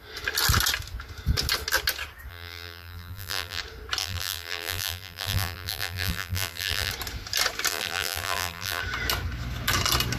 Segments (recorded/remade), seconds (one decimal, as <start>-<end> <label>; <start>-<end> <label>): 0.0-2.3 recorded; 2.3-3.6 remade; 3.6-4.0 recorded; 4.0-6.9 remade; 6.9-7.7 recorded; 7.7-8.8 remade; 8.8-10.2 recorded

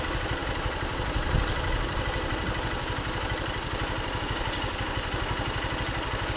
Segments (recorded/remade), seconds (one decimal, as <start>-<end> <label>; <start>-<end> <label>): 0.0-6.4 recorded

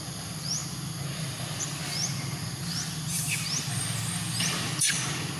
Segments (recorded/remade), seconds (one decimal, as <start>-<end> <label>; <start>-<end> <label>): 0.0-0.6 remade; 0.6-1.2 recorded; 1.2-1.8 remade; 1.8-4.7 recorded; 4.7-5.4 remade

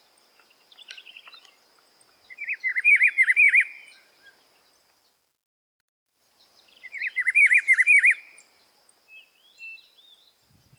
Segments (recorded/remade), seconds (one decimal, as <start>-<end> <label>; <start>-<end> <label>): 0.0-2.7 recorded; 2.7-4.7 remade; 4.7-5.7 recorded; 5.7-8.8 remade; 8.8-10.8 recorded

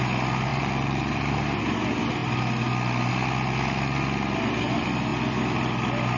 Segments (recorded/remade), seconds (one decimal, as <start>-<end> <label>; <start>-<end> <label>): 0.0-0.5 recorded; 0.5-1.6 remade; 1.6-6.2 recorded

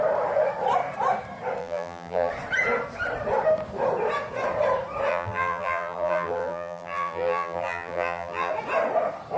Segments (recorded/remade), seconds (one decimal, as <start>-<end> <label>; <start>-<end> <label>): 0.0-1.6 recorded; 1.6-2.3 remade; 2.3-5.1 recorded; 5.1-8.5 remade; 8.5-9.4 recorded

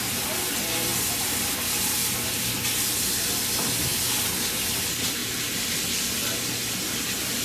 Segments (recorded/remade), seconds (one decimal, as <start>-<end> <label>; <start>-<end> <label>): 0.0-0.9 recorded; 0.9-1.6 remade; 1.6-5.2 recorded; 5.2-5.9 remade; 5.9-7.4 recorded

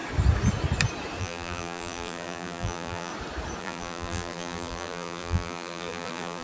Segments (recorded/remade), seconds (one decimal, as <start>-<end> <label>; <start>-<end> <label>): 0.0-1.2 recorded; 1.2-3.1 remade; 3.1-3.6 recorded; 3.6-6.4 remade